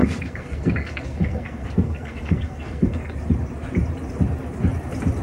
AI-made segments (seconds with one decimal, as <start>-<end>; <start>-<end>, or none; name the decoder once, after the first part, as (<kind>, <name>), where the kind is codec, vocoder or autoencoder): 0.0-3.1 (codec, SNAC)